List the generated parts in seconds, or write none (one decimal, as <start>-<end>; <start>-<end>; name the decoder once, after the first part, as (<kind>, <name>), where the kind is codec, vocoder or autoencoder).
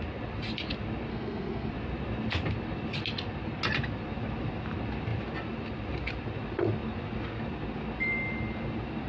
1.1-1.7 (codec, SNAC)